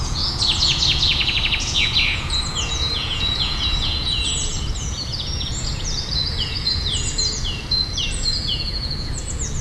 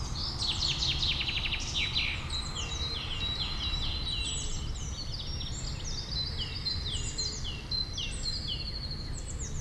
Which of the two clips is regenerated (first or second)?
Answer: first